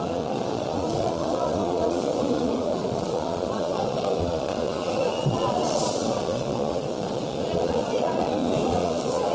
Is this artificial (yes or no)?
yes